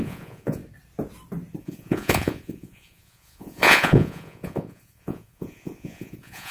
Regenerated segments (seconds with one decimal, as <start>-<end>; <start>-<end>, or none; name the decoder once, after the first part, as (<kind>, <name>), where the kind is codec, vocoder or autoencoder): 0.0-0.6 (vocoder, Vocos); 1.6-6.5